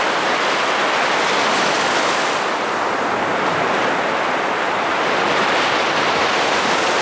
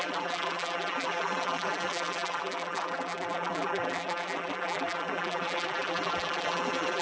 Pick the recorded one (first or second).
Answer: first